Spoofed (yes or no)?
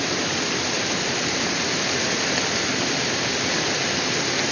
no